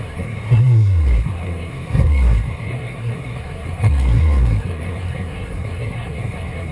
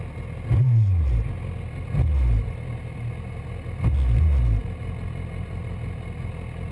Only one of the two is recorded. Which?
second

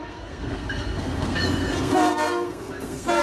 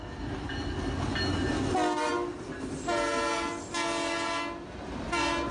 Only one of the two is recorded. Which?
second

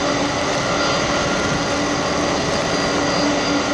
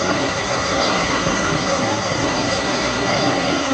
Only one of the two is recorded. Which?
first